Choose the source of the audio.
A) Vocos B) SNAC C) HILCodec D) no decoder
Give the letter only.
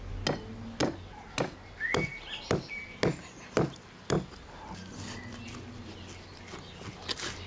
D